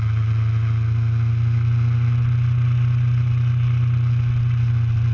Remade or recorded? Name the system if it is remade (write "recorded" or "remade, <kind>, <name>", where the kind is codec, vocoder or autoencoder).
recorded